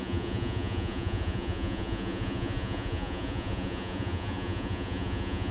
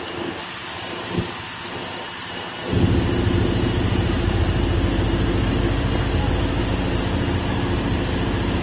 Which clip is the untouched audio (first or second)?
second